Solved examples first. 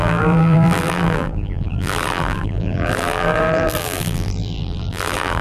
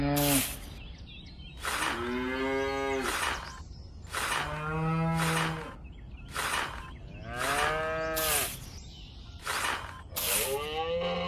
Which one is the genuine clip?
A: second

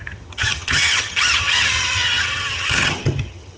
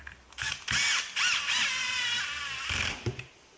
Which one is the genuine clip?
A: second